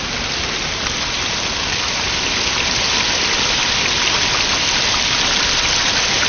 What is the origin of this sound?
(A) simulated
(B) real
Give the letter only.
B